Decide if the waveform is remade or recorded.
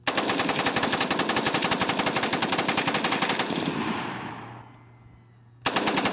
recorded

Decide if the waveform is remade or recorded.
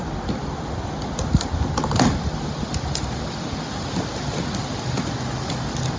recorded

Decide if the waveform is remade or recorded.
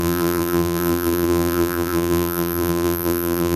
remade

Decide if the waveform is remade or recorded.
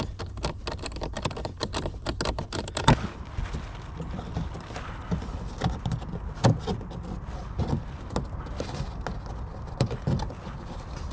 recorded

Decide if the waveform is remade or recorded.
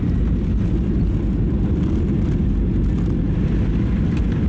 recorded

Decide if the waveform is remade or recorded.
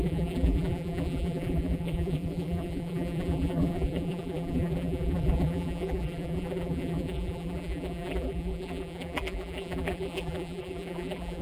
remade